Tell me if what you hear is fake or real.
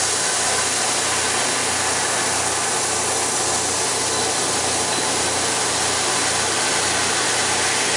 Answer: real